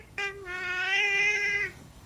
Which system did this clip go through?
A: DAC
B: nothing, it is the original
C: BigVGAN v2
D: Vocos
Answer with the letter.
A